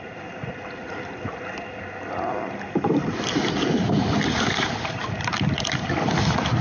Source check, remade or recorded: recorded